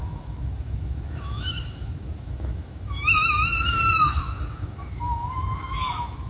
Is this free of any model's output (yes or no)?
no